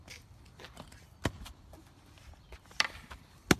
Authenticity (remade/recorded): recorded